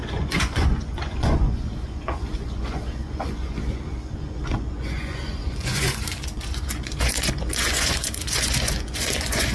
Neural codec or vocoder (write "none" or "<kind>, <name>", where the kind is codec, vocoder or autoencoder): vocoder, Vocos